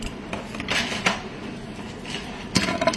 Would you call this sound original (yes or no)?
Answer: no